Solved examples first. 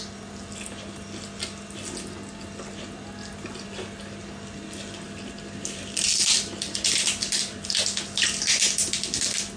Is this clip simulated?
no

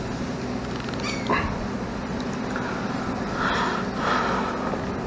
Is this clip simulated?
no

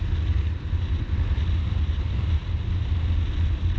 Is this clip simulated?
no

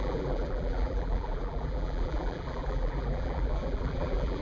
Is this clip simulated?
yes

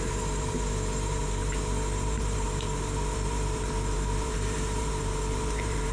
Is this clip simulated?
yes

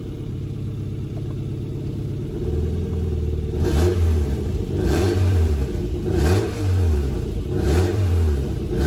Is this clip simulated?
yes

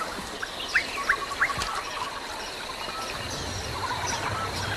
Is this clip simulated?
no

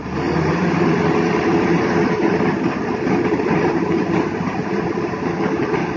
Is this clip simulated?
yes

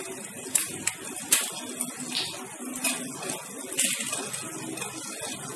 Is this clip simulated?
no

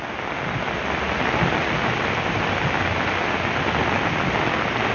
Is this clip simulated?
no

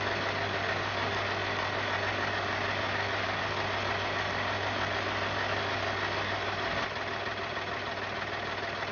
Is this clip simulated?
no